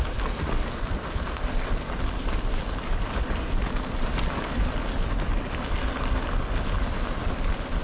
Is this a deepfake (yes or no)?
no